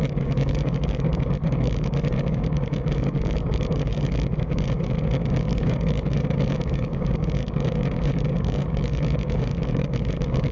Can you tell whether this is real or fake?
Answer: fake